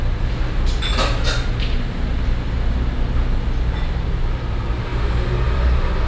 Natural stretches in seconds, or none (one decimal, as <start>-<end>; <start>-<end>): 0.0-6.1